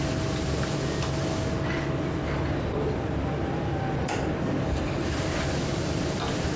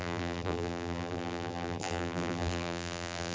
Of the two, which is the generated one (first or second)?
second